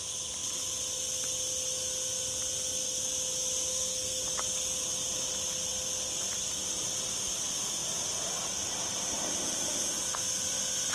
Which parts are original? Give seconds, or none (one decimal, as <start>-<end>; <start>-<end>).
0.0-3.7; 4.2-10.9